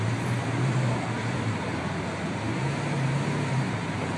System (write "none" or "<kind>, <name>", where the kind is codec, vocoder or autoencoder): vocoder, BigVGAN v2